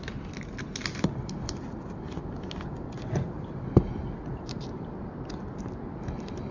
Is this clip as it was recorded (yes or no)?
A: yes